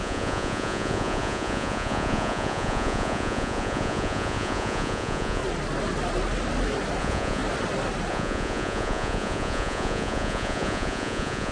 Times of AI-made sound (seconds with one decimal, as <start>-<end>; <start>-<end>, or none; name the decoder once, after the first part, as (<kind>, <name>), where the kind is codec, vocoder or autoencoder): 0.0-5.4 (vocoder, Vocos); 7.0-7.4; 8.1-11.5